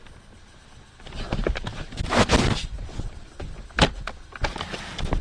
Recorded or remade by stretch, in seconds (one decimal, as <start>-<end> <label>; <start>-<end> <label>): 0.0-5.2 recorded